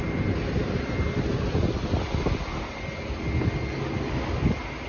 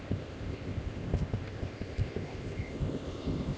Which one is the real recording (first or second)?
first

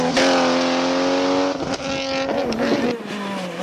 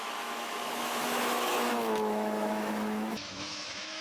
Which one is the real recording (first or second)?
first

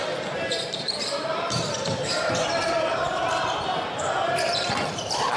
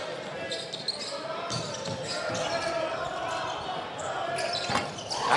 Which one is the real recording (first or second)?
second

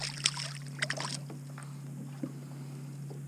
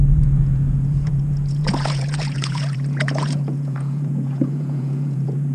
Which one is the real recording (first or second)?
first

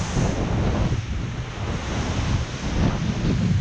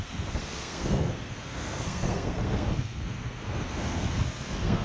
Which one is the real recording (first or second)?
first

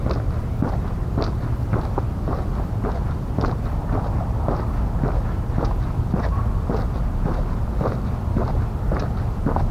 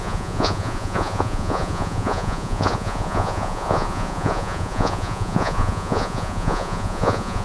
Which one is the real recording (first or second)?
first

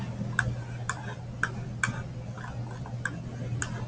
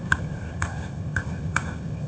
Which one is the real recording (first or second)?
first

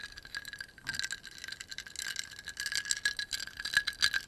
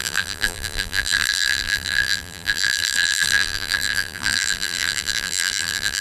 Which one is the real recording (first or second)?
first